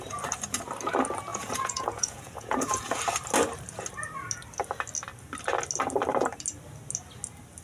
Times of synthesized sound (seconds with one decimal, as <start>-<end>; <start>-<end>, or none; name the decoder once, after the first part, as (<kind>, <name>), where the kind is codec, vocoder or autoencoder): 1.3-3.0 (vocoder, Vocos)